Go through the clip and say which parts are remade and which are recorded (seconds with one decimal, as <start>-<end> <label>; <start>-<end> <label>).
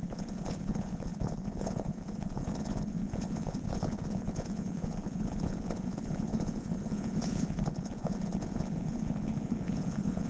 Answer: 0.0-10.3 remade